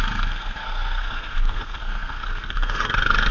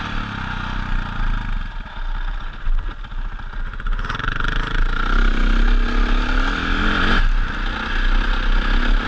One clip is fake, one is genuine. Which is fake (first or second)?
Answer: first